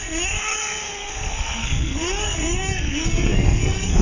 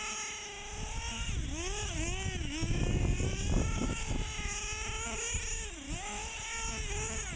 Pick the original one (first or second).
second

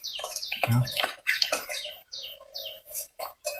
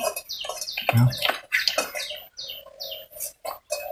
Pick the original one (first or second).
second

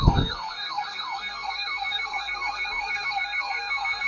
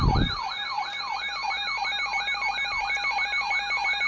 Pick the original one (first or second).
second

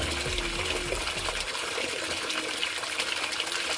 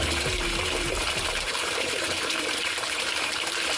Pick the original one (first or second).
first